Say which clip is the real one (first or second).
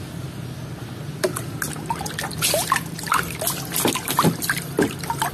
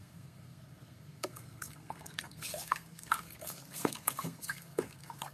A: first